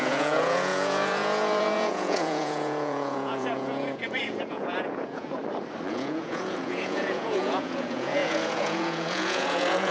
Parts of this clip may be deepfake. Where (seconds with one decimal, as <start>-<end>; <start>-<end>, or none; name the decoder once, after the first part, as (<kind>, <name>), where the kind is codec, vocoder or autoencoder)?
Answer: 0.0-5.4 (vocoder, Vocos); 5.9-9.9